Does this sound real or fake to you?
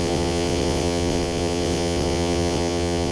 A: fake